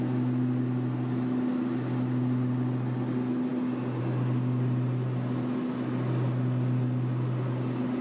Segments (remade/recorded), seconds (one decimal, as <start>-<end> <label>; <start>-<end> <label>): 0.0-8.0 recorded